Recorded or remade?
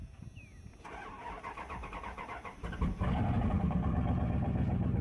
remade